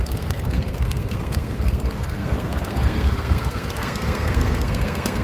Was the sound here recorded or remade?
remade